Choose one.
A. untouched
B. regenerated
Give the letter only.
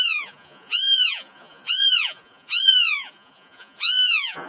B